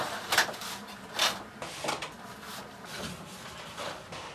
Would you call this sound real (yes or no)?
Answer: no